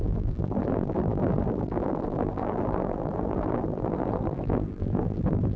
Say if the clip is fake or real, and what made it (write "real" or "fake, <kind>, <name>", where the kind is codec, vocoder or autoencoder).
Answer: fake, vocoder, BigVGAN v2